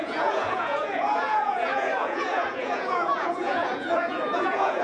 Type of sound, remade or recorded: remade